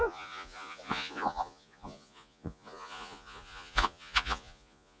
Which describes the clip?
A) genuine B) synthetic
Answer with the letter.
B